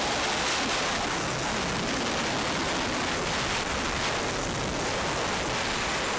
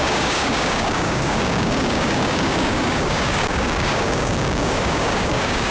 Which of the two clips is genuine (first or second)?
first